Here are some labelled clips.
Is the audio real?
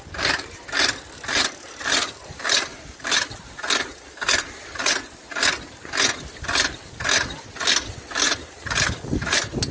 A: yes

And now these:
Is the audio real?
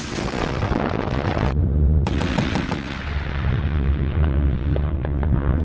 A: no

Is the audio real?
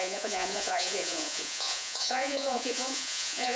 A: no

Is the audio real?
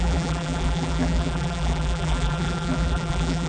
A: no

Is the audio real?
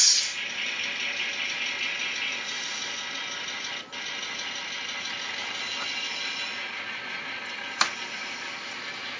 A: yes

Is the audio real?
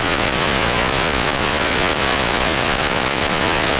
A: no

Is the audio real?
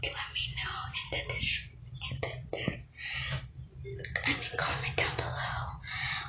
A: yes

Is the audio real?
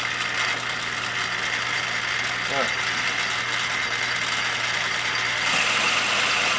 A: yes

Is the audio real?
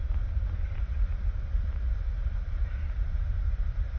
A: yes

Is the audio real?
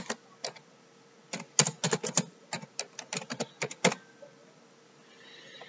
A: yes